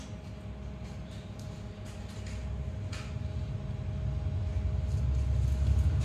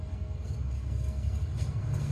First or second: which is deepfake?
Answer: second